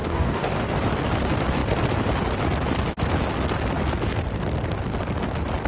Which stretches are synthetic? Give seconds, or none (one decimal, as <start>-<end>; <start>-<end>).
0.0-0.7